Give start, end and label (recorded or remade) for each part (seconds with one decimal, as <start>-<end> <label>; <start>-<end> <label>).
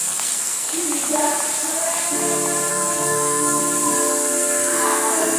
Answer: 0.0-0.8 remade; 0.8-2.7 recorded; 2.7-3.6 remade; 3.6-4.1 recorded; 4.1-5.4 remade